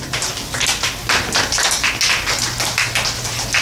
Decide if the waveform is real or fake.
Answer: real